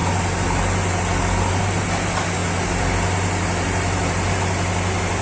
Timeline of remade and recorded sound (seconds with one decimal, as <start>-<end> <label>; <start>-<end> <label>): 0.0-5.2 recorded